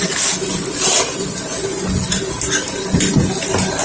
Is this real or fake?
real